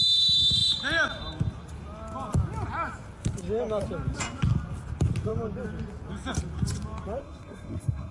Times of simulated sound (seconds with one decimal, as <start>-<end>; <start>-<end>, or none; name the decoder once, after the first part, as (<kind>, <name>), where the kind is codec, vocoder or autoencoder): 7.2-8.1 (codec, SNAC)